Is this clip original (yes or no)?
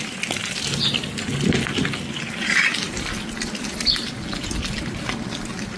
yes